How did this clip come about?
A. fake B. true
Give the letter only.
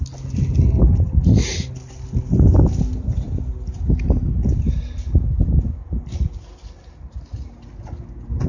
B